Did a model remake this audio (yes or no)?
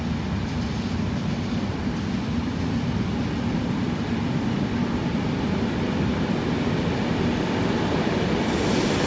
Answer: no